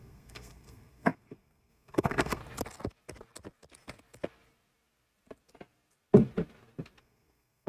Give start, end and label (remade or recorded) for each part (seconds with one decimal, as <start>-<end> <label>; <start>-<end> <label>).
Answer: 0.0-2.4 remade; 2.4-7.0 recorded; 7.0-7.7 remade